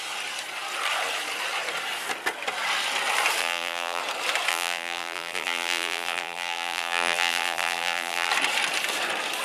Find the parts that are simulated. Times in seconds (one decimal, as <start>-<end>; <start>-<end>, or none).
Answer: 3.4-4.0; 4.5-8.3